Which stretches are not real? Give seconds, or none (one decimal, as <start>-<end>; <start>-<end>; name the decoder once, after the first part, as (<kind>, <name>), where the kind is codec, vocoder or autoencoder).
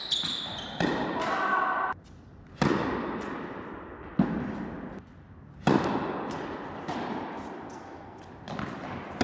7.7-8.2 (codec, SNAC)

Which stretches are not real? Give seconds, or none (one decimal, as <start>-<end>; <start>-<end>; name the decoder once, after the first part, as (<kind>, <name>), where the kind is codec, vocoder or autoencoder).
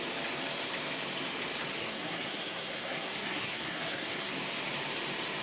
1.8-4.3 (codec, SNAC)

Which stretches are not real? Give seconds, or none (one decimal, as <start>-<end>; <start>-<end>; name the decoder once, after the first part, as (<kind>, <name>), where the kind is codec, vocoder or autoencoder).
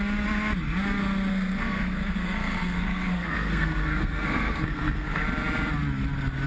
1.3-5.2 (codec, SNAC)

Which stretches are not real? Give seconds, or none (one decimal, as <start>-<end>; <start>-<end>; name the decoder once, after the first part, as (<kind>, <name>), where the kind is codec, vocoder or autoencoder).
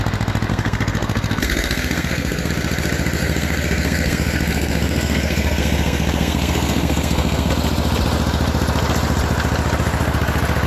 0.5-2.5 (codec, SNAC); 3.2-7.5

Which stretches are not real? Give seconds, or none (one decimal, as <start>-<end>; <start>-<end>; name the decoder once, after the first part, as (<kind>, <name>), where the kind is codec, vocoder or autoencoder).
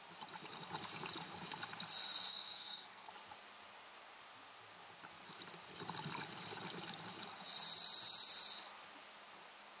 2.3-3.1 (codec, SNAC)